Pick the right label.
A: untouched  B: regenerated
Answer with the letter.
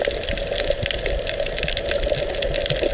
A